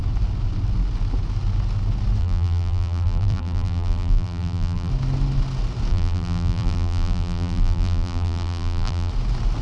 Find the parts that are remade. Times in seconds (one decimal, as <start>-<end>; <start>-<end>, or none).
2.2-4.9; 5.9-9.1